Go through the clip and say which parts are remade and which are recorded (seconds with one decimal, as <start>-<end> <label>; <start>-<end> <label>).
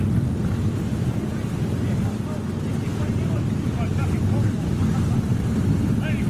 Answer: 0.0-6.3 recorded